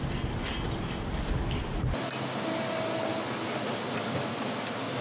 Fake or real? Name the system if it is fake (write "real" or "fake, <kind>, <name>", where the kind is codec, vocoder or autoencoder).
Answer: real